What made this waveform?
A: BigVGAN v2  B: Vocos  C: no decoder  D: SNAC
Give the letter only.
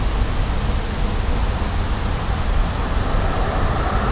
C